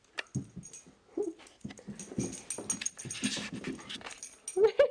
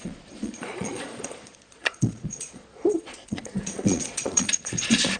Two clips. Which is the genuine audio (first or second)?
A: first